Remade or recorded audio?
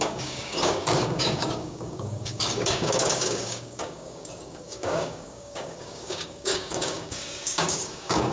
remade